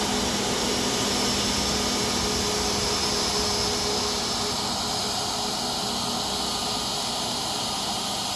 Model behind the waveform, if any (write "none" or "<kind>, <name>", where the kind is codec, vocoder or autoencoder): none